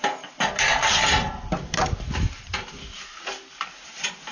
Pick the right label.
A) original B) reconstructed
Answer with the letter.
A